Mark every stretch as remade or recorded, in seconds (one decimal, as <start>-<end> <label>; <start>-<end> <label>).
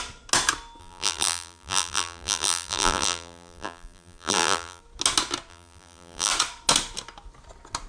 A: 0.0-0.8 recorded; 0.8-4.8 remade; 4.8-5.5 recorded; 5.5-6.3 remade; 6.3-7.9 recorded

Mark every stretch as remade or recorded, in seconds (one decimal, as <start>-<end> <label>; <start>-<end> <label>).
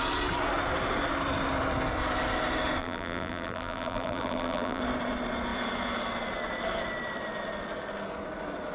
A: 0.0-2.8 recorded; 2.8-4.8 remade; 4.8-8.7 recorded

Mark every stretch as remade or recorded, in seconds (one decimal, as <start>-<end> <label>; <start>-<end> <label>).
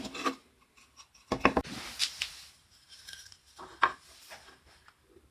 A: 0.0-5.3 recorded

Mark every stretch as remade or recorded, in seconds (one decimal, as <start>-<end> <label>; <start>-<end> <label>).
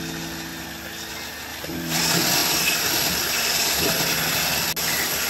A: 0.0-1.5 recorded; 1.5-2.0 remade; 2.0-2.4 recorded; 2.4-4.4 remade; 4.4-5.3 recorded